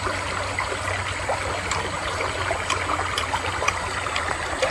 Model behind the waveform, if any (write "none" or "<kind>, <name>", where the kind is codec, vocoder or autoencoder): none